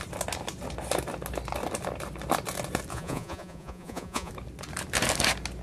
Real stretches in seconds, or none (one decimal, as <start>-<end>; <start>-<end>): 0.0-2.9; 4.3-5.6